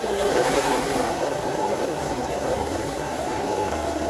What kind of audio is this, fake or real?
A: fake